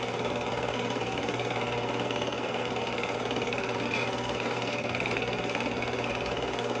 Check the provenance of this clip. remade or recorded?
remade